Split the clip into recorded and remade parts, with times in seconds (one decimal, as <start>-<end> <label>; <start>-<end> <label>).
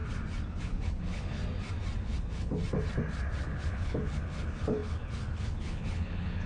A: 0.0-0.6 recorded; 0.6-1.4 remade; 1.4-2.0 recorded; 2.0-2.6 remade; 2.6-3.4 recorded; 3.4-6.5 remade